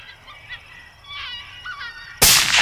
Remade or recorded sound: recorded